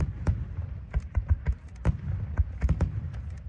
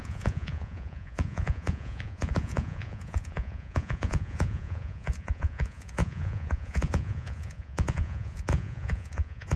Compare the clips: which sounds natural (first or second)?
first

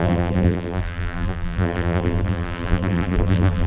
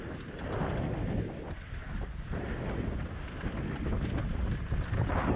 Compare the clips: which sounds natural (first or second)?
second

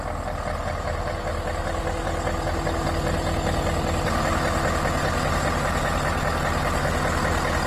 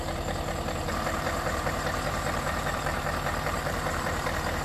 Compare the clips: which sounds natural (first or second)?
first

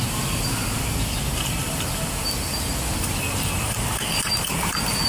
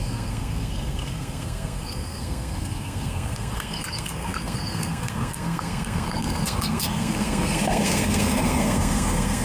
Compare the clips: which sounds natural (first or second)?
first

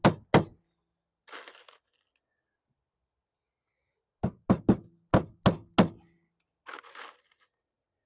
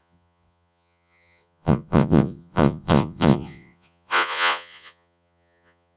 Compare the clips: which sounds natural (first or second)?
first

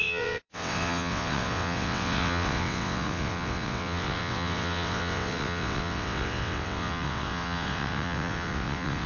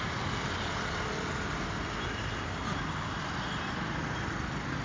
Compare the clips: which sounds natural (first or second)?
second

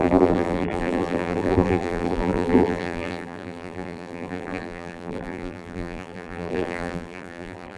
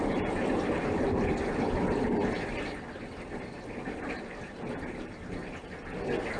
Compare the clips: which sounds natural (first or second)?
second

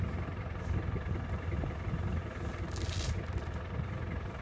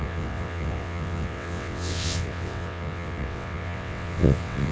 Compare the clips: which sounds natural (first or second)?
first